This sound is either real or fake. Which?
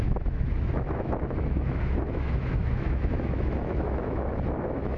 fake